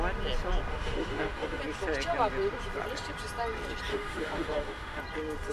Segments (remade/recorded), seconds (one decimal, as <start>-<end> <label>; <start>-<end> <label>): 0.0-0.7 recorded; 0.7-1.6 remade; 1.6-3.9 recorded; 3.9-5.0 remade; 5.0-5.5 recorded